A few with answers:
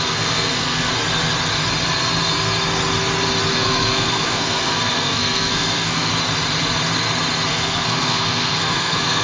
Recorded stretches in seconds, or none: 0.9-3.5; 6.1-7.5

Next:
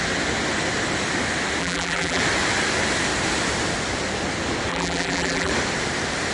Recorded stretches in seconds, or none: 0.0-1.6; 2.2-4.7; 5.5-6.3

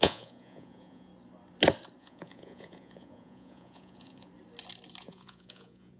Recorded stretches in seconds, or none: 1.1-2.0; 4.3-5.0

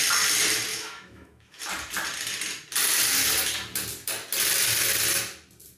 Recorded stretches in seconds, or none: 0.0-0.7; 1.6-5.8

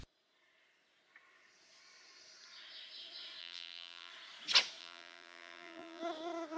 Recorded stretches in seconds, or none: 0.0-3.4; 4.1-4.8; 6.0-6.6

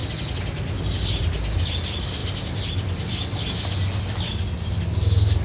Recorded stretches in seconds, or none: 0.0-5.4

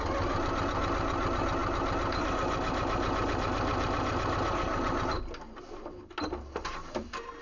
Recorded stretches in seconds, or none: 0.0-7.4